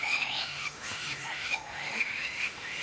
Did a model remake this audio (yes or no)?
yes